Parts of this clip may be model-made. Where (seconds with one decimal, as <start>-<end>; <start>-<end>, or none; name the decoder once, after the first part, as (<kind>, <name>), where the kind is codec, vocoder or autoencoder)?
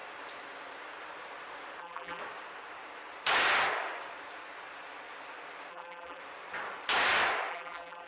1.8-2.2 (vocoder, BigVGAN v2); 5.7-6.2; 7.5-8.1